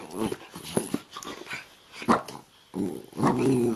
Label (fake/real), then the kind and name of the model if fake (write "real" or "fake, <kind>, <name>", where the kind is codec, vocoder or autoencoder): real